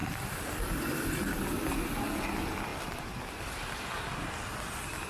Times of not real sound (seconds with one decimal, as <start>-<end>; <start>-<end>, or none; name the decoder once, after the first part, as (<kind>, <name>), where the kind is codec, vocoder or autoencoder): 0.0-1.2 (vocoder, BigVGAN v2); 2.7-5.1